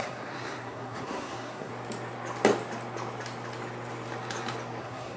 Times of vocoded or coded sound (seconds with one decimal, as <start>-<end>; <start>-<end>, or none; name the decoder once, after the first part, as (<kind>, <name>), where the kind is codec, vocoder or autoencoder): 0.0-1.7 (codec, SNAC); 4.8-5.2